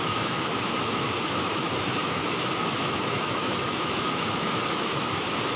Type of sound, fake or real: fake